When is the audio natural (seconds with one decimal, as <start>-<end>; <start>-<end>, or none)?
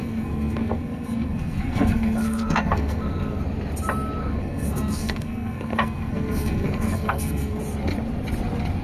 3.4-4.2; 7.6-8.8